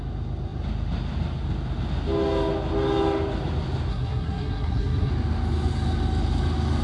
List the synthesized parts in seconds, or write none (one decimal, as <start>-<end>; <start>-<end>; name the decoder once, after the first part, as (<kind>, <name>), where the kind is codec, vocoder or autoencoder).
3.9-5.1 (codec, SNAC)